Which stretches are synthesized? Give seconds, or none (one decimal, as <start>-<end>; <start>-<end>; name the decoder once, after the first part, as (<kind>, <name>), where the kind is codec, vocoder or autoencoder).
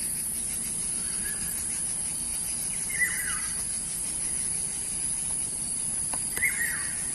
1.2-1.8 (vocoder, BigVGAN v2); 2.3-3.6; 5.6-6.5